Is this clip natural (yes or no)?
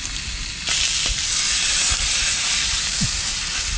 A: yes